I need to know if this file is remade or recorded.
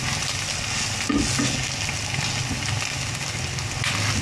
recorded